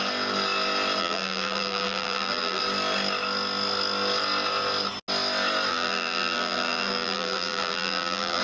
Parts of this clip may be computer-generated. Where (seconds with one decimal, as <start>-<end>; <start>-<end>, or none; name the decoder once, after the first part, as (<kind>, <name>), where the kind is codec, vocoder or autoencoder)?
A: 1.0-2.6 (vocoder, BigVGAN v2); 5.7-8.4